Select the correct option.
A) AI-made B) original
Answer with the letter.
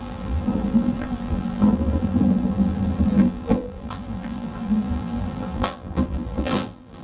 A